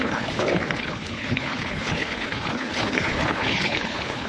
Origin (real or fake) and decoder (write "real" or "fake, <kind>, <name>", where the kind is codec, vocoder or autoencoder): fake, codec, HILCodec